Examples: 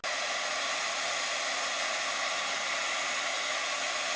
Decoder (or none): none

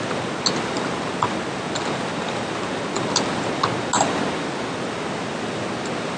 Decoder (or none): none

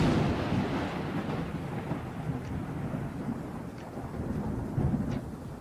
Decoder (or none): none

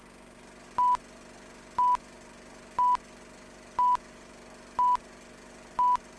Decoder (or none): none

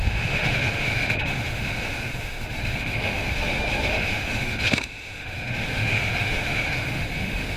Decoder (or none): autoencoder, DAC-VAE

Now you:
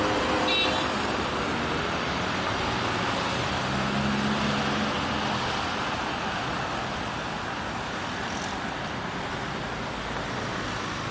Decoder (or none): none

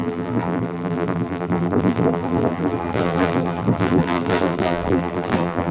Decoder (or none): vocoder, BigVGAN v2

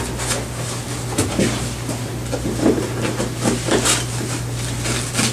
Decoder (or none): none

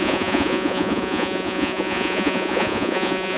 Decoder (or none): vocoder, Vocos